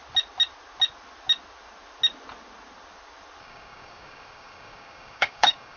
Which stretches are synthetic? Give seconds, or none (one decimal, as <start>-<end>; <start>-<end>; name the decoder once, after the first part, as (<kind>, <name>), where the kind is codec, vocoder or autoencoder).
3.4-5.8 (codec, DAC)